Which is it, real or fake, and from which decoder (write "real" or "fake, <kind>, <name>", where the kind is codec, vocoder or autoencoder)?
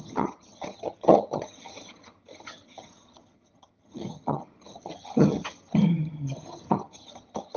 fake, vocoder, HiFi-GAN